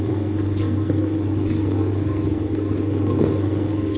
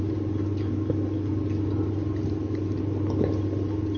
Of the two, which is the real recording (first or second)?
second